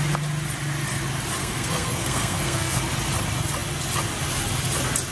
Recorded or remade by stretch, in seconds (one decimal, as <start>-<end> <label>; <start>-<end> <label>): 0.0-1.4 recorded; 1.4-2.8 remade; 2.8-5.1 recorded